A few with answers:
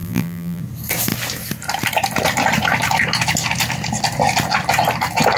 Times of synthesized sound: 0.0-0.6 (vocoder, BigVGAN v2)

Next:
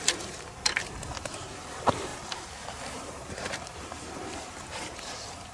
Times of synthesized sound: 0.0-5.5 (vocoder, BigVGAN v2)

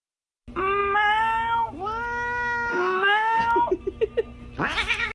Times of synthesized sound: 2.7-3.4 (autoencoder, DAC-VAE)

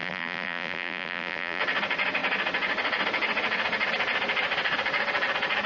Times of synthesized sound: 0.0-1.6 (vocoder, BigVGAN v2)

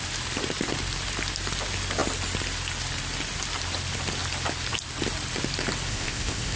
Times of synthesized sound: 5.9-6.6 (codec, ZipCodec)

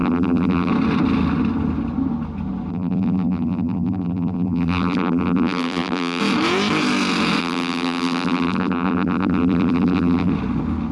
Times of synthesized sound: 0.0-0.7 (vocoder, BigVGAN v2); 2.7-6.2; 7.4-10.3

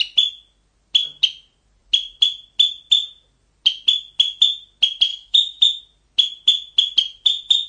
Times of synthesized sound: 5.1-5.8 (autoencoder, DAC-VAE)

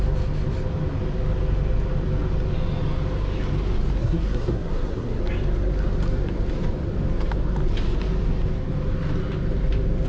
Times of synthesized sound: 4.0-5.2 (codec, SNAC)